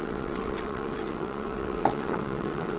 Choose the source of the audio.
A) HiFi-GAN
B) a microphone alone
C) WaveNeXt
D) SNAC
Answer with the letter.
C